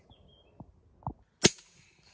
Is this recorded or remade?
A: recorded